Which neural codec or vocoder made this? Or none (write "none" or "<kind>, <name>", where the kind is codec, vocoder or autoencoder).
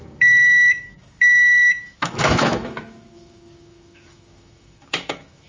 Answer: autoencoder, DAC-VAE